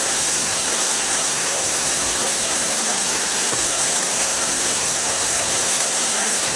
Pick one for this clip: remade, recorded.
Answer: remade